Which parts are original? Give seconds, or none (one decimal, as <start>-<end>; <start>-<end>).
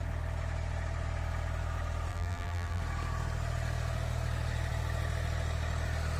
0.0-2.1; 2.8-6.2